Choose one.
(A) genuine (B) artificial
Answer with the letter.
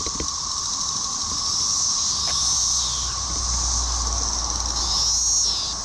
A